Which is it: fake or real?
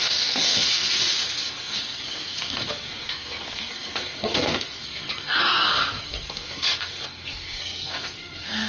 fake